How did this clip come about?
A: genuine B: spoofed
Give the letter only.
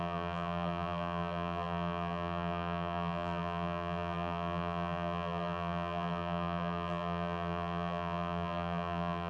B